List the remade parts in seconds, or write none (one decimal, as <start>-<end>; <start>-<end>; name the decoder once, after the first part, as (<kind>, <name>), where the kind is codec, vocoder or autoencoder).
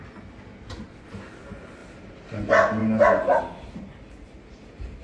none